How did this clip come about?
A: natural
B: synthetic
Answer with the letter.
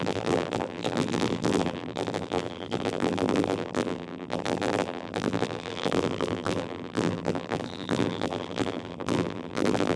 B